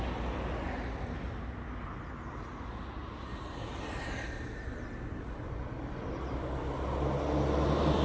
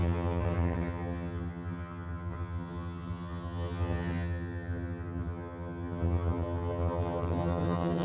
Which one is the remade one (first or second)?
second